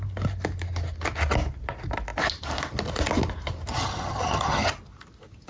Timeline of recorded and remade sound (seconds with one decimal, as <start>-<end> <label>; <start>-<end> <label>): 0.0-3.7 recorded; 3.7-4.7 remade; 4.7-5.5 recorded